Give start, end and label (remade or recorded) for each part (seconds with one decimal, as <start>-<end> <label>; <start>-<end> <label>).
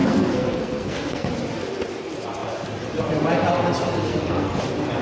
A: 0.0-1.3 remade; 1.3-4.1 recorded; 4.1-4.6 remade; 4.6-5.0 recorded